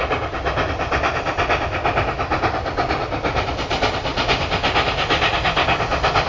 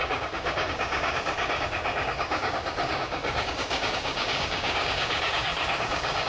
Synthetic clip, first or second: second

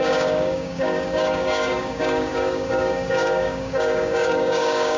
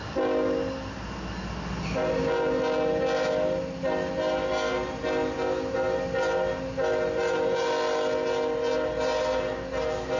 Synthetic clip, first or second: first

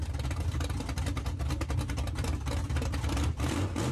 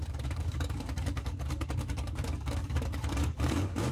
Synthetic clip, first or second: second